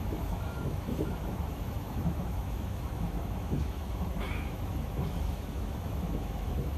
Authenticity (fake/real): fake